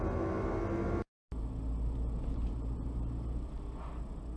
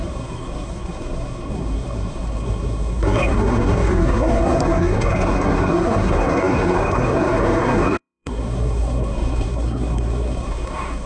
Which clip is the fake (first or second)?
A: second